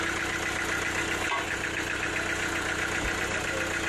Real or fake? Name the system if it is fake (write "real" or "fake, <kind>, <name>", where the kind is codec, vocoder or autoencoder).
real